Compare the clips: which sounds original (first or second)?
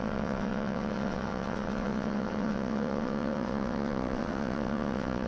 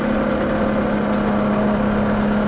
second